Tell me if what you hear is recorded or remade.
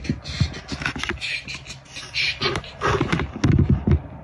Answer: recorded